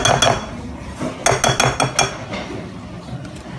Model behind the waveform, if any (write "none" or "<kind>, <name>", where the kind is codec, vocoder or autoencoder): none